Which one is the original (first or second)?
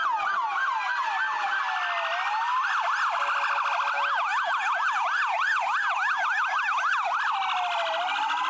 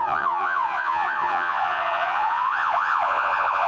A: first